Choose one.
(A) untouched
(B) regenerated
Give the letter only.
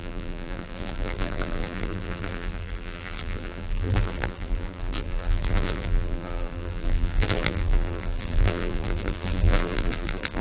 B